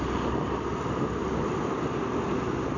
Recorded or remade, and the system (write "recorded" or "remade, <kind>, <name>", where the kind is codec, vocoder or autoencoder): recorded